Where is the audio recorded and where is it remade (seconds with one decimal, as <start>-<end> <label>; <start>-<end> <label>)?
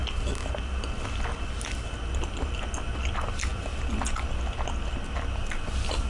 0.0-6.1 recorded